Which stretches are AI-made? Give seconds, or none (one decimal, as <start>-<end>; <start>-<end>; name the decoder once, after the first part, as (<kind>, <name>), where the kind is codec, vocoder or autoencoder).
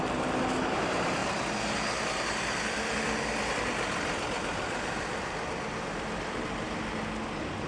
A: none